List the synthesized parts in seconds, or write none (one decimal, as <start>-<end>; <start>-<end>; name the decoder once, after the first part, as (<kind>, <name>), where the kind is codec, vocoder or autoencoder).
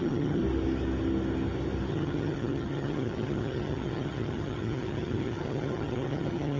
0.0-0.4 (vocoder, HiFi-GAN); 1.9-6.6